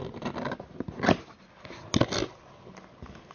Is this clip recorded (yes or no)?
yes